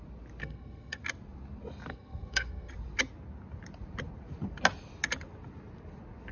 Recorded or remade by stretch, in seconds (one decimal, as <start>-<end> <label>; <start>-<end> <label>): 0.0-0.4 recorded; 0.4-1.0 remade; 1.0-1.9 recorded; 1.9-2.7 remade; 2.7-6.3 recorded